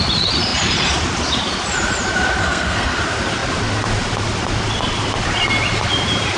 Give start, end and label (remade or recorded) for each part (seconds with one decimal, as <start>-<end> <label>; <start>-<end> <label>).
0.0-2.4 recorded; 2.4-3.0 remade; 3.0-6.4 recorded